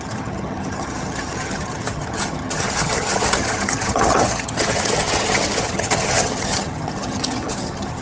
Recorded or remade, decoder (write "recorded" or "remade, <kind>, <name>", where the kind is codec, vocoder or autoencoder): remade, vocoder, HiFi-GAN